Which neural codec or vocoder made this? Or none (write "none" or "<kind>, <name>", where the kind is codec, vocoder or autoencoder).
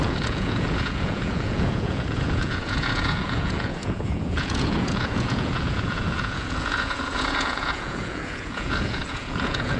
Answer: vocoder, Vocos